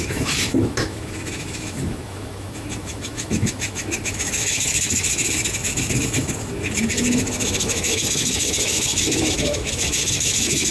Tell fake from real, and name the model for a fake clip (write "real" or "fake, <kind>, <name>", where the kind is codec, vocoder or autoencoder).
fake, autoencoder, DAC-VAE